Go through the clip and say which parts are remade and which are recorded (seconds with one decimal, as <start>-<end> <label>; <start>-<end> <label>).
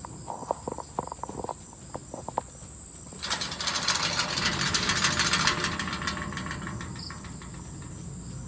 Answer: 0.0-8.5 recorded